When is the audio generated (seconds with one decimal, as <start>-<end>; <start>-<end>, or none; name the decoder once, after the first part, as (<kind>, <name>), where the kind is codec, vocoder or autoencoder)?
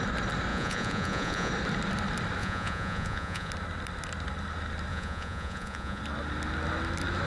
0.5-1.5 (vocoder, Vocos); 2.4-3.5; 4.9-6.0